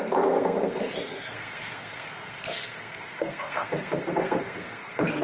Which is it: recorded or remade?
remade